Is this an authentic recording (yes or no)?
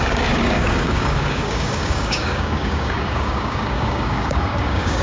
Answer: no